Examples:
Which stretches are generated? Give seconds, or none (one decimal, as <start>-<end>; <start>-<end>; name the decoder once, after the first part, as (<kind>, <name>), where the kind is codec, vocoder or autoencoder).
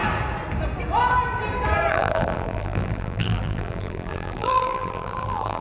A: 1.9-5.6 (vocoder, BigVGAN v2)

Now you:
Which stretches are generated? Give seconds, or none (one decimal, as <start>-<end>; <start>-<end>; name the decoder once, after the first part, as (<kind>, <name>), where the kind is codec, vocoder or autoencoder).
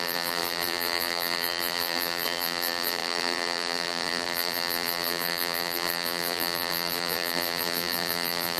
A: 0.0-8.6 (vocoder, BigVGAN v2)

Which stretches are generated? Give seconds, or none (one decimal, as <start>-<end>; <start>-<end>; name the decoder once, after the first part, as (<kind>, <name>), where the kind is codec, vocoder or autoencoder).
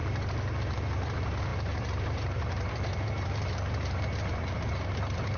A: 0.7-5.4 (vocoder, BigVGAN v2)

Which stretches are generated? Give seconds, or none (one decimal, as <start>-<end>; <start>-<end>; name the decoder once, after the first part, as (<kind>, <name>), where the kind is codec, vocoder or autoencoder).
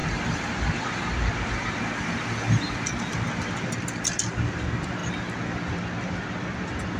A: none